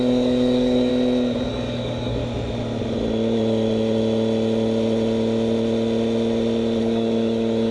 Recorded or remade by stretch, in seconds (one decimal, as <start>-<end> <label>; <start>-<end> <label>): 0.0-0.9 remade; 0.9-1.5 recorded; 1.5-2.2 remade; 2.2-6.8 recorded; 6.8-7.7 remade